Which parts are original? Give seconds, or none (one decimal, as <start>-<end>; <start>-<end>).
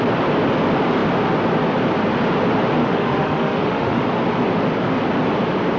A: 0.0-2.8; 4.0-5.8